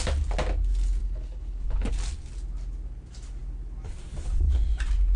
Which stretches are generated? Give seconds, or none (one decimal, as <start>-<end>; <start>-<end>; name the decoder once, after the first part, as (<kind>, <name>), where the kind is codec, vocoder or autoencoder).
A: 1.0-1.9 (codec, HILCodec)